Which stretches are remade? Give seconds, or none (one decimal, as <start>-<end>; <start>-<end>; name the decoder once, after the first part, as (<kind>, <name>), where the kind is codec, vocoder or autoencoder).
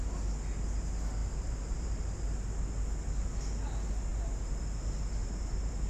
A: 1.2-2.0 (vocoder, BigVGAN v2); 4.1-4.6; 5.2-5.9